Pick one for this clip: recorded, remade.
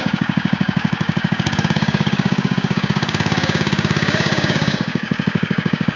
remade